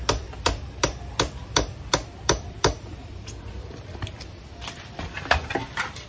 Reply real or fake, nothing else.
fake